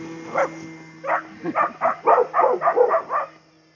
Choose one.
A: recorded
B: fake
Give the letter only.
A